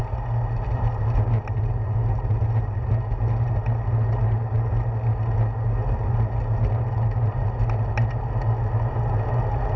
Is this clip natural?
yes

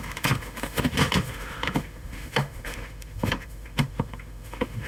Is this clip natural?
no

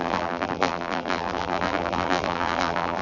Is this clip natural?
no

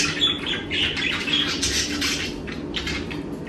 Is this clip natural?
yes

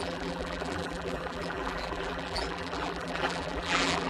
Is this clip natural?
no